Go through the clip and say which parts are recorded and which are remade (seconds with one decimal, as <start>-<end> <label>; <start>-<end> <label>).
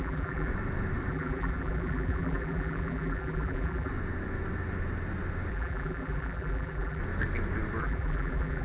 0.0-0.5 remade; 0.5-1.1 recorded; 1.1-3.9 remade; 3.9-5.5 recorded; 5.5-7.0 remade; 7.0-7.8 recorded; 7.8-8.6 remade